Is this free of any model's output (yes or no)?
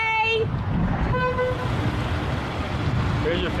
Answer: yes